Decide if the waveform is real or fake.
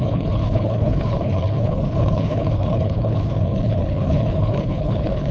fake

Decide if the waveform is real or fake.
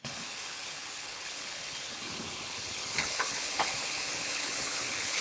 fake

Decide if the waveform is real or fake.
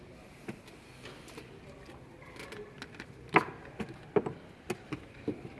real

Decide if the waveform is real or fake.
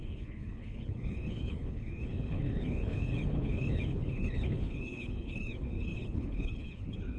fake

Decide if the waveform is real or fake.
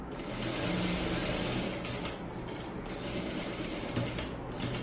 real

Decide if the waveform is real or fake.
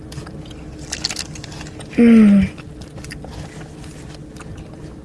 real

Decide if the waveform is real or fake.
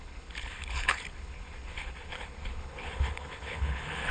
fake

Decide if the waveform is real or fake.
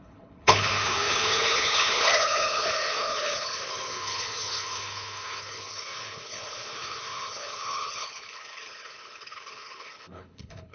fake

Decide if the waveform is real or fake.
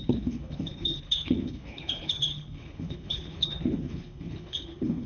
fake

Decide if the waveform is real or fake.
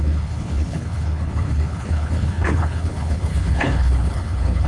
fake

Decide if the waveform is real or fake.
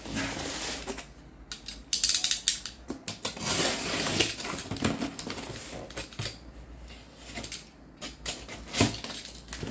real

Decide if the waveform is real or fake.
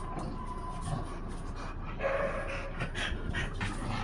real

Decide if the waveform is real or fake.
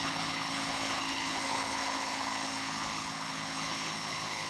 fake